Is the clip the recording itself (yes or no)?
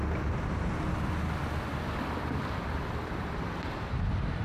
yes